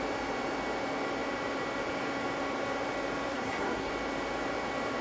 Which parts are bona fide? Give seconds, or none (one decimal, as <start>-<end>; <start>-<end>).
0.0-3.3; 3.9-5.0